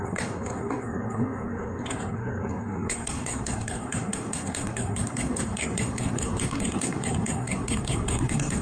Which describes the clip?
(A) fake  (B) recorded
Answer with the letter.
A